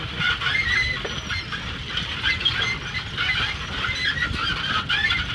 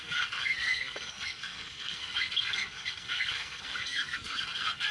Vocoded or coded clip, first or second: second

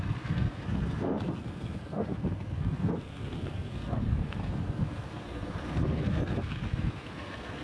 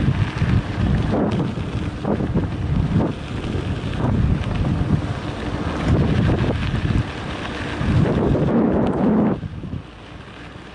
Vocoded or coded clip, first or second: first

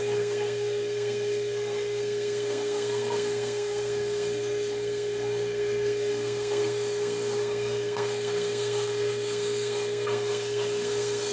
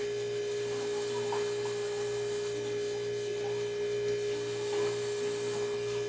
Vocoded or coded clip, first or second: first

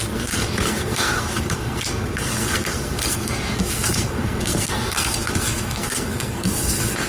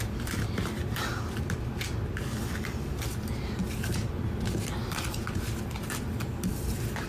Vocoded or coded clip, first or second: first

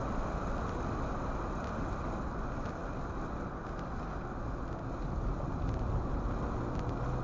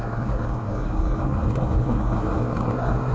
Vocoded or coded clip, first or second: second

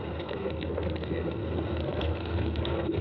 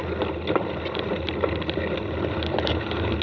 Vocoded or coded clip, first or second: first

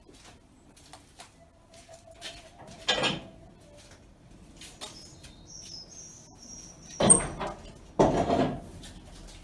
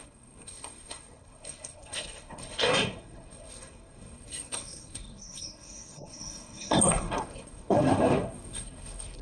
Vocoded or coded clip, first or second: second